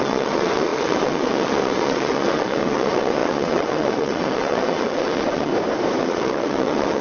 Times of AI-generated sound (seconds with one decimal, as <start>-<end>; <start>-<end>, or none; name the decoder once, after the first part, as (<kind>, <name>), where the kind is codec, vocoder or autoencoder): 0.0-5.5 (vocoder, WaveNeXt); 6.0-7.0